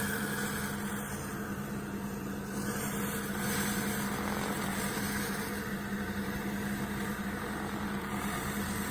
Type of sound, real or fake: real